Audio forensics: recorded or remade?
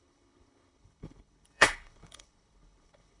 remade